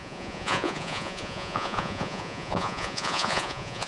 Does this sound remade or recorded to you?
remade